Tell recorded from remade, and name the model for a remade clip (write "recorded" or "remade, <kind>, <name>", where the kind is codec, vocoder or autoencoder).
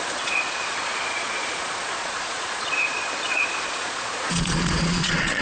remade, vocoder, Vocos